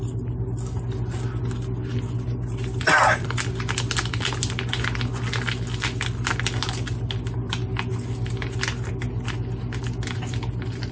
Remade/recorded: recorded